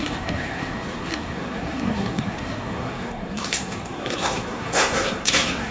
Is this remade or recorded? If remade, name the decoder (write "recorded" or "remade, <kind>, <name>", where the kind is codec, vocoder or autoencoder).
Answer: remade, codec, SNAC